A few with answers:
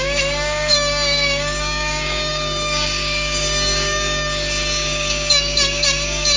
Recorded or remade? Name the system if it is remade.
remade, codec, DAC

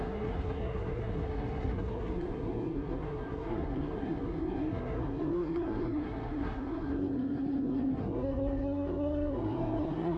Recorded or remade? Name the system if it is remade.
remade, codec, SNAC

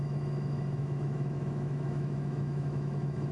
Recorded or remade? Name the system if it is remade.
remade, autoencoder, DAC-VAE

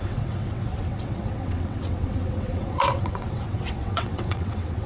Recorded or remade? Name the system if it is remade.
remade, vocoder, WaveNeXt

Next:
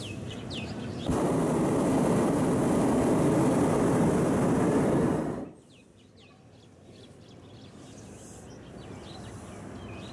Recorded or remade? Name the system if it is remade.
recorded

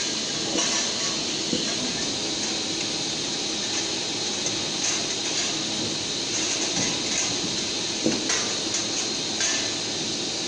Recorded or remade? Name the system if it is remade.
recorded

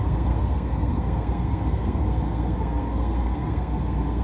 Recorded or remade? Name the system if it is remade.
remade, codec, SNAC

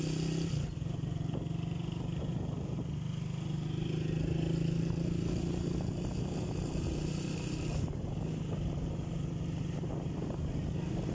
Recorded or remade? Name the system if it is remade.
recorded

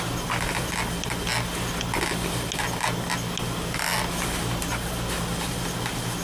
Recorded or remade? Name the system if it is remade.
recorded